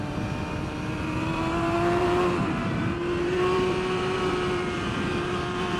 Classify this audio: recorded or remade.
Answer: remade